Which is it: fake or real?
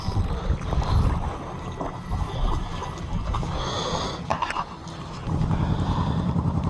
fake